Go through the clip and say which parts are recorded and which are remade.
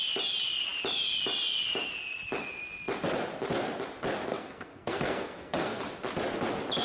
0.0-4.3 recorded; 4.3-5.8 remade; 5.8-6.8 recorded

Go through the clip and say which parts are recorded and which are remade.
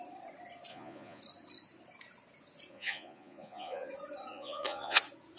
0.0-0.7 recorded; 0.7-1.2 remade; 1.2-2.7 recorded; 2.7-3.9 remade; 3.9-4.3 recorded; 4.3-5.0 remade; 5.0-5.4 recorded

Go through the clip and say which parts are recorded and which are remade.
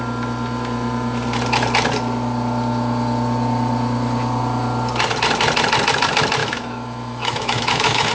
0.0-6.4 recorded; 6.4-8.1 remade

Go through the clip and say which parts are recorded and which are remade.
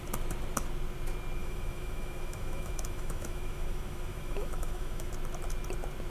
0.0-1.4 recorded; 1.4-5.1 remade; 5.1-6.1 recorded